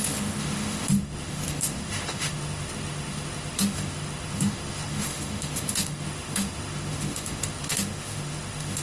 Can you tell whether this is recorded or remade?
remade